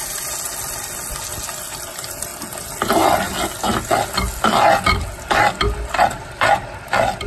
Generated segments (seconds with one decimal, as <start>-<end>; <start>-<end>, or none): none